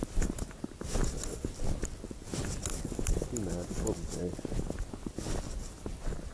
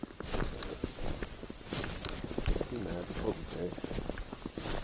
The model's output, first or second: second